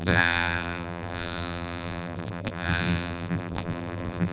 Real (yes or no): no